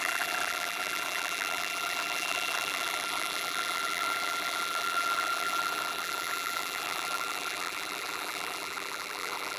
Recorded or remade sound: remade